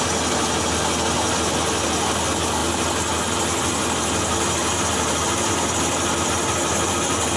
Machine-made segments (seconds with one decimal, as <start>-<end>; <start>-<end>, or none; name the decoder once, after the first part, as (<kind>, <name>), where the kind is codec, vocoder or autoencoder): none